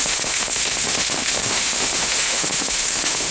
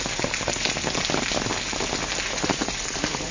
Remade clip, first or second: first